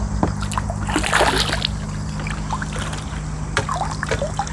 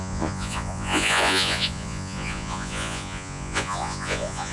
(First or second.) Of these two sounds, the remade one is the second